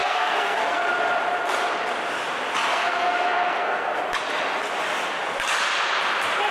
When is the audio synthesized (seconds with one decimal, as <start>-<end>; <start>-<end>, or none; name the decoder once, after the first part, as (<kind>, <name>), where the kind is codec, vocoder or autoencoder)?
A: 0.0-0.9 (codec, SNAC); 2.7-4.0